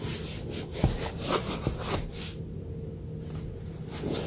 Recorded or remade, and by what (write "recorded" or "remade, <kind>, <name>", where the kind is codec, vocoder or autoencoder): recorded